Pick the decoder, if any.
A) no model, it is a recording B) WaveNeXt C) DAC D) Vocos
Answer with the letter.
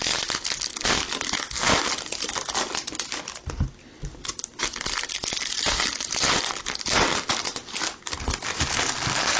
A